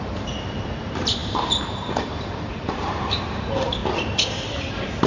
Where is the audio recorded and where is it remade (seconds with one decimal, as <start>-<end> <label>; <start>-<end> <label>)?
0.0-3.8 remade; 3.8-4.5 recorded; 4.5-5.1 remade